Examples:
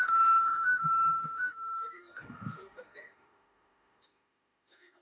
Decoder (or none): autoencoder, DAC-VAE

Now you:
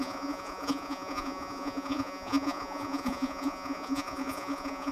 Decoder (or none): vocoder, Vocos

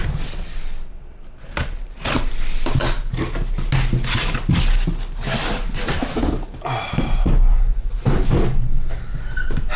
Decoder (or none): none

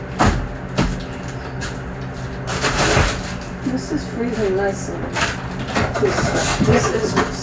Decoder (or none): none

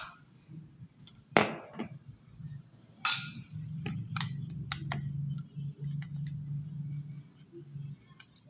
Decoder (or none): none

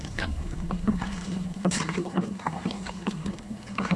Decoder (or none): codec, SNAC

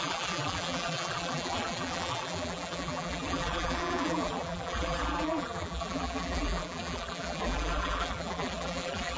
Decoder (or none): vocoder, BigVGAN v2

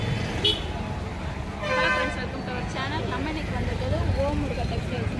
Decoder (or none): none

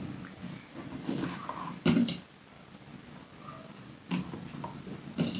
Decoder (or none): none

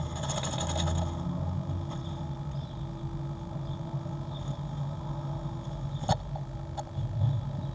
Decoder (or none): none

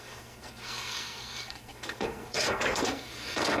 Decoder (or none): codec, SNAC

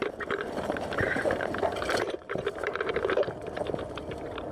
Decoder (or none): vocoder, BigVGAN v2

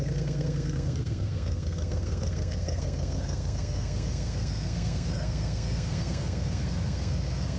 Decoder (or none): codec, SNAC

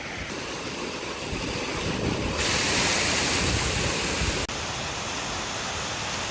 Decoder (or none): none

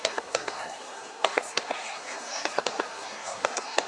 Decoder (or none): codec, SNAC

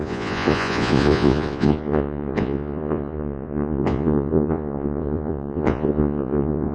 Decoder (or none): vocoder, Vocos